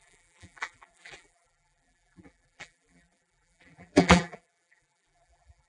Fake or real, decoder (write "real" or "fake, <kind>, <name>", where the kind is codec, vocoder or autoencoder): fake, vocoder, BigVGAN v2